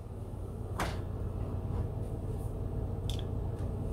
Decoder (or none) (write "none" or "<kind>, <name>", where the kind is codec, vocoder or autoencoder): none